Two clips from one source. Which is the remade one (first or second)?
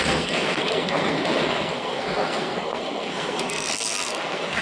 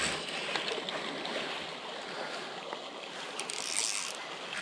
first